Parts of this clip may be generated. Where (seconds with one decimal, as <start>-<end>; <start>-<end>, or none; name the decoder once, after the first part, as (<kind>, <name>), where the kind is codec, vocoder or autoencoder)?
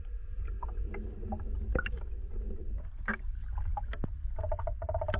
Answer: none